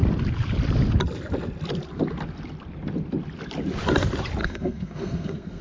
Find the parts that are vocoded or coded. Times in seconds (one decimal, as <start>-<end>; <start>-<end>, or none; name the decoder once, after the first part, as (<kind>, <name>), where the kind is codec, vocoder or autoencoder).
4.4-5.6 (codec, SNAC)